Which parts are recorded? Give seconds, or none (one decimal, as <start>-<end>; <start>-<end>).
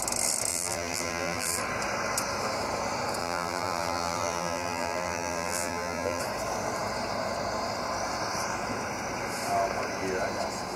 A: 0.0-0.5; 1.6-3.2; 6.2-10.8